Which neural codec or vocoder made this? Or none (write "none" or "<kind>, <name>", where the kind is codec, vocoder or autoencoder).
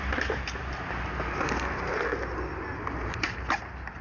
none